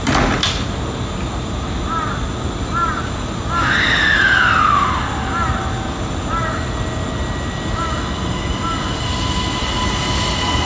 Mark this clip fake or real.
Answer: real